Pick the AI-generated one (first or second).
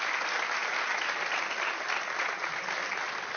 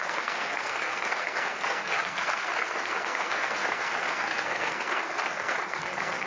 second